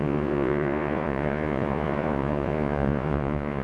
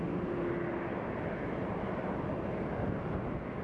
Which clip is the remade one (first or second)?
first